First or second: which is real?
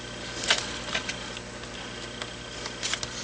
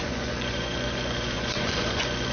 first